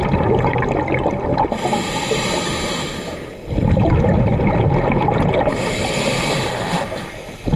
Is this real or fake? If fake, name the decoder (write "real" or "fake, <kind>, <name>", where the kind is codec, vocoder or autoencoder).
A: real